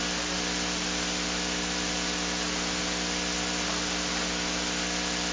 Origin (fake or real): real